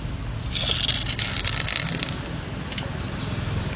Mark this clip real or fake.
real